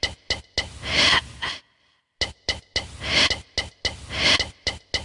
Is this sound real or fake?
real